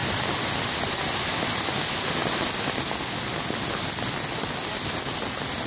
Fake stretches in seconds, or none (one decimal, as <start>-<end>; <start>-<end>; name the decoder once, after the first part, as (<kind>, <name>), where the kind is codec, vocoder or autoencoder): none